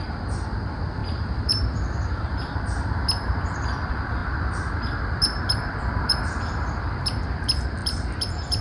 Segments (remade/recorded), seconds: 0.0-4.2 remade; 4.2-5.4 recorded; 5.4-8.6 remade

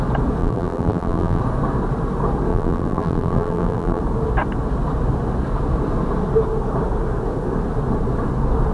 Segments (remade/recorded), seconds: 0.0-0.4 recorded; 0.4-1.4 remade; 1.4-2.5 recorded; 2.5-4.0 remade; 4.0-8.7 recorded